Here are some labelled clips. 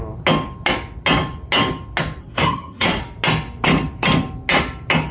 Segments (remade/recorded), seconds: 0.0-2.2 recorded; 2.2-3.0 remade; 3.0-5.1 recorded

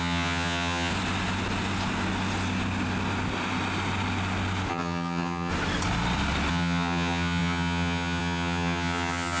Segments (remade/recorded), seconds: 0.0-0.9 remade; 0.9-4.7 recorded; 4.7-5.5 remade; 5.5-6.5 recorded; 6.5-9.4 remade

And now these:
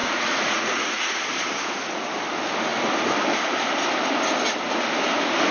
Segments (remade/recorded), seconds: 0.0-1.2 remade; 1.2-5.5 recorded

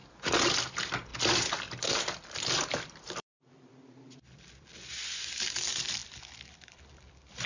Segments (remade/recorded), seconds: 0.0-0.6 recorded; 0.6-1.1 remade; 1.1-1.9 recorded; 1.9-7.5 remade

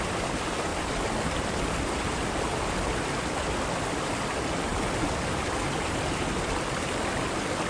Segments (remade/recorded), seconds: 0.0-7.7 recorded

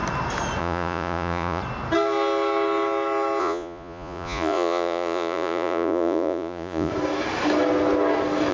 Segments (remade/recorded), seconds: 0.0-0.6 recorded; 0.6-1.6 remade; 1.6-3.4 recorded; 3.4-6.9 remade; 6.9-8.5 recorded

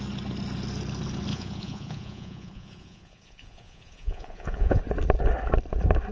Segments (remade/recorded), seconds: 0.0-1.3 recorded; 1.3-4.8 remade; 4.8-6.1 recorded

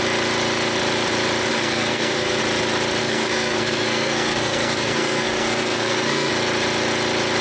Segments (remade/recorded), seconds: 0.0-1.5 recorded; 1.5-2.4 remade; 2.4-3.0 recorded; 3.0-6.3 remade; 6.3-7.4 recorded